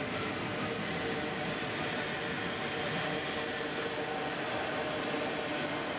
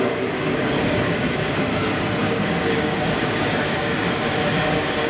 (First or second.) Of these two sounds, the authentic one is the first